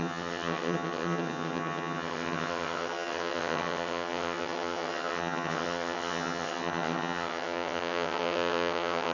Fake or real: fake